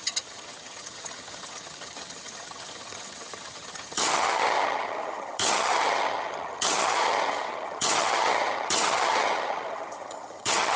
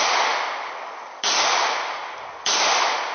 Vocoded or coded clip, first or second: first